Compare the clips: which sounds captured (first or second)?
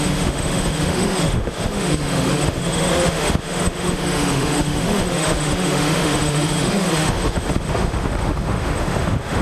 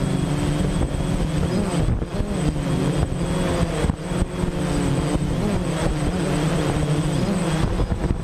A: second